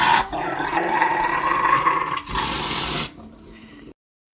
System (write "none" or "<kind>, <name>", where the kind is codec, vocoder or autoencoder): vocoder, BigVGAN v2